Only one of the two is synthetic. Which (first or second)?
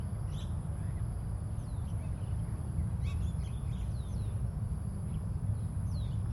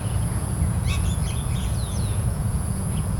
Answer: second